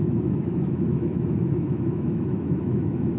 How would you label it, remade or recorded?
remade